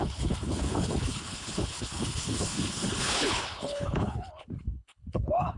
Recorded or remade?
remade